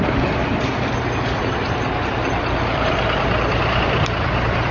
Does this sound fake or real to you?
real